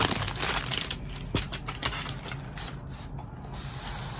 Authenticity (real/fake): real